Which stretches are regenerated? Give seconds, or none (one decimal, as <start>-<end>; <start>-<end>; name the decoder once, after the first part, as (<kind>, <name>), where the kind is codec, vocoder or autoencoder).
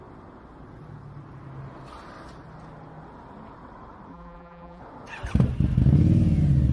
4.1-4.8 (vocoder, BigVGAN v2)